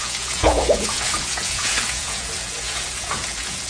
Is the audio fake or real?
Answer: fake